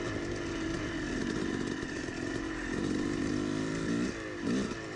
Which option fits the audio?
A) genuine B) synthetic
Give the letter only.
A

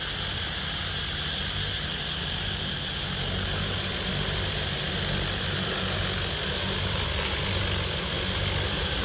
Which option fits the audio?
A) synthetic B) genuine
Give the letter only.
B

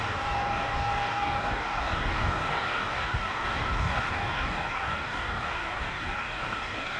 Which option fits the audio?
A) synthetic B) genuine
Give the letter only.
A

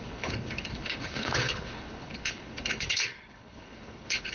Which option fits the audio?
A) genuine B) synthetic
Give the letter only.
B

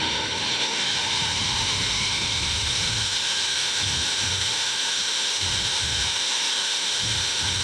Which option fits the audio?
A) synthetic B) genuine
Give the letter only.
A